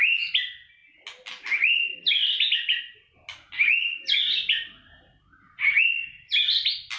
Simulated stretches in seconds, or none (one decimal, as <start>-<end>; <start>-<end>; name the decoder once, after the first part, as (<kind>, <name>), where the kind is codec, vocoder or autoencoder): none